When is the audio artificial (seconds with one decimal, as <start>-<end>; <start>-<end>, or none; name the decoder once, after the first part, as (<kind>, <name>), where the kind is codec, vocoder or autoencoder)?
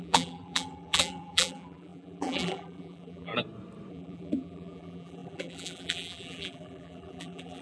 0.0-3.3 (vocoder, BigVGAN v2); 3.9-7.6